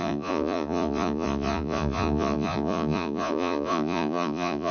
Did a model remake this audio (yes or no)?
yes